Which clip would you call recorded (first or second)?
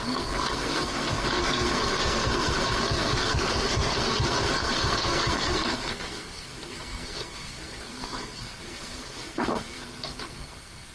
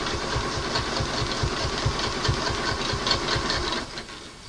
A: second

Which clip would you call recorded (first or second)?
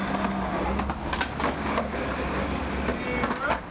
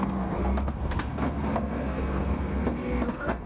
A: first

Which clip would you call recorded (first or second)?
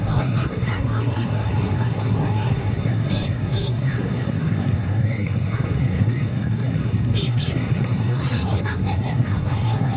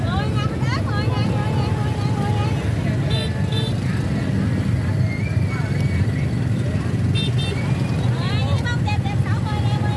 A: second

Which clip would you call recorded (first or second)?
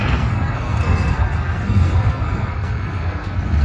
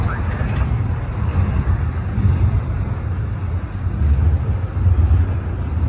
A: second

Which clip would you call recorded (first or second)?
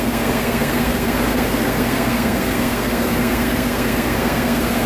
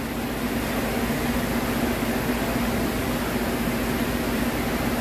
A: second